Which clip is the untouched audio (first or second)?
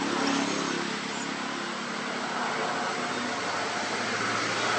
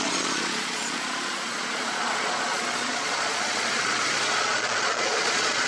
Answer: first